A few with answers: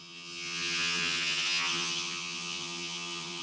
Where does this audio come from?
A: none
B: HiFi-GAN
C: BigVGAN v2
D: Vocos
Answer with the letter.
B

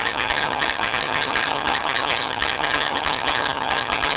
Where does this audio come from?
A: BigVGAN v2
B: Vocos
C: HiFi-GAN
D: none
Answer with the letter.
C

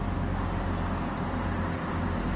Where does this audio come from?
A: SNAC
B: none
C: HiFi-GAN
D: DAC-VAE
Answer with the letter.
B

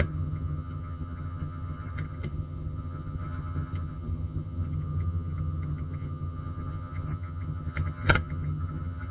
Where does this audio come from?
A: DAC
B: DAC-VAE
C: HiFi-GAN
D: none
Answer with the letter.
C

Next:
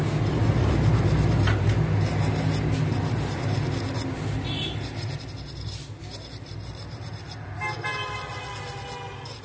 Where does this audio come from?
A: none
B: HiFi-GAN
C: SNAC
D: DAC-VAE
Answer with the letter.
A